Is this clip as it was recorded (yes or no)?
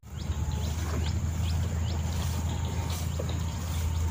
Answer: yes